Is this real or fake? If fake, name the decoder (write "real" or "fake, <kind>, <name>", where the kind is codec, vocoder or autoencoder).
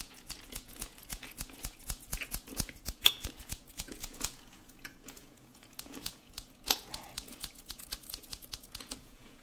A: fake, vocoder, Vocos